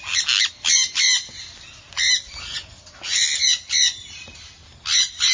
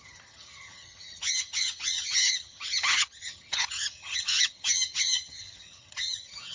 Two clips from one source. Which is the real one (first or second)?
first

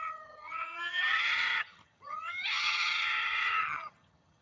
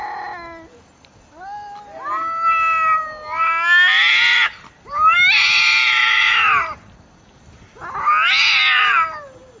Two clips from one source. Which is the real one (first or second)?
second